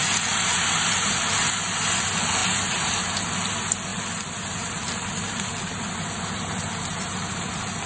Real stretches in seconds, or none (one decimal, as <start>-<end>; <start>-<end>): 1.2-2.4; 3.1-3.9; 7.5-7.9